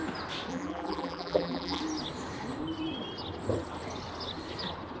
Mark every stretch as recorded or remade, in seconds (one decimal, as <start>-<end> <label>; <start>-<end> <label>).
0.0-0.5 recorded; 0.5-1.8 remade; 1.8-5.0 recorded